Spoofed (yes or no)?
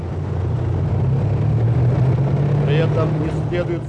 no